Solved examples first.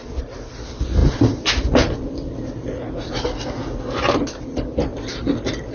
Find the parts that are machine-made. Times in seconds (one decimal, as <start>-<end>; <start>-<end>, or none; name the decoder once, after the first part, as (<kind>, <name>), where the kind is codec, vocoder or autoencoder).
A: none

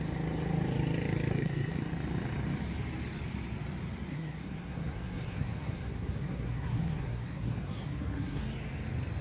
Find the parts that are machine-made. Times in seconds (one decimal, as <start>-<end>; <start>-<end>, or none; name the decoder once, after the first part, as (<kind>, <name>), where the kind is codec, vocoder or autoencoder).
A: 1.3-1.8 (codec, SNAC); 4.1-8.4

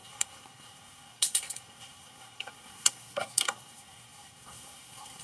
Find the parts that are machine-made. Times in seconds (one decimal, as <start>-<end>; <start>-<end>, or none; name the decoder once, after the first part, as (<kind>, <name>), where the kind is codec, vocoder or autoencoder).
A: 0.0-5.2 (codec, SNAC)

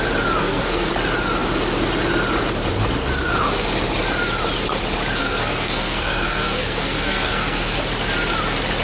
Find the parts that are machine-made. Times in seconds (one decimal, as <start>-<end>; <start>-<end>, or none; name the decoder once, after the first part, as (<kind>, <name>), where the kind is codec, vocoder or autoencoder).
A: 0.4-0.9 (codec, SNAC); 5.2-7.8

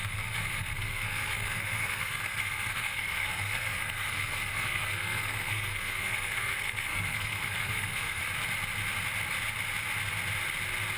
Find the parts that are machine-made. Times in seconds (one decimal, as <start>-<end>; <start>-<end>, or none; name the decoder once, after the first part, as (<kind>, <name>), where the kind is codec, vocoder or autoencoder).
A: 0.0-8.2 (codec, SNAC)